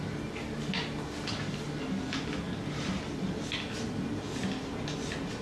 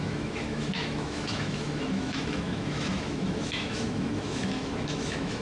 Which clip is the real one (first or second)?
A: first